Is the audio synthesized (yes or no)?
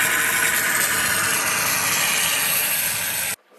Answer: no